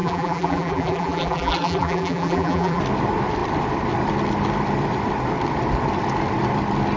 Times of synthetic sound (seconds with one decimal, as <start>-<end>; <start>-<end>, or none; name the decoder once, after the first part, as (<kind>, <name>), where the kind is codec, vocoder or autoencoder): 0.0-2.8 (vocoder, BigVGAN v2)